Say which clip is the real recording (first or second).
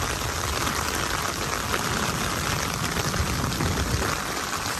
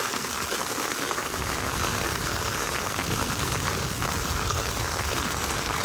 first